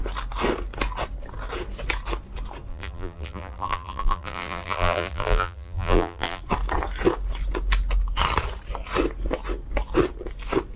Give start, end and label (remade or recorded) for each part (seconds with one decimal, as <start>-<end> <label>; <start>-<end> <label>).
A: 0.0-2.7 recorded; 2.7-6.4 remade; 6.4-10.8 recorded